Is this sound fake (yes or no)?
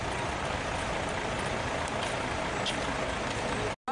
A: no